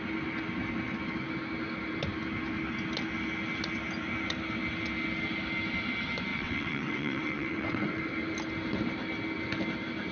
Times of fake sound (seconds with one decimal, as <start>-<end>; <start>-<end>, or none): 6.3-8.0